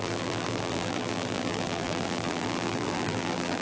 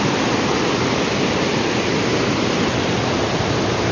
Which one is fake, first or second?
first